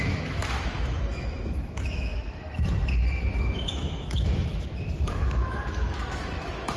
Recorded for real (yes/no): no